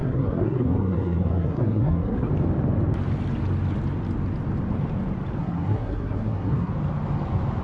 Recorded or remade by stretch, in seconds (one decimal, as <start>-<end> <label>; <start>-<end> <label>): 0.0-2.3 remade; 2.3-5.4 recorded; 5.4-6.7 remade; 6.7-7.6 recorded